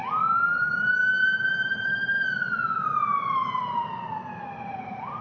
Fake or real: fake